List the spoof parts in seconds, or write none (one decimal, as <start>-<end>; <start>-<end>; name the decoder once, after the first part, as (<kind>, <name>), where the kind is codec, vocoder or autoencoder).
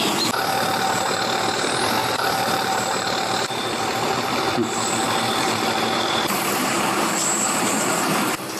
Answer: 2.0-6.8 (vocoder, BigVGAN v2); 7.2-7.8